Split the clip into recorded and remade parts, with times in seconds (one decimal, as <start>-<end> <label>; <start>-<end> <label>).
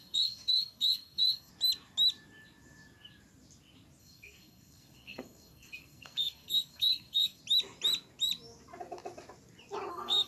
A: 0.0-1.5 remade; 1.5-4.0 recorded; 4.0-7.4 remade; 7.4-9.9 recorded; 9.9-10.3 remade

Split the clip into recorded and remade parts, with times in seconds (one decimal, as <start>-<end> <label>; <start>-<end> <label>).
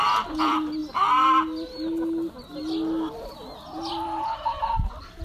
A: 0.0-0.8 remade; 0.8-3.9 recorded; 3.9-5.2 remade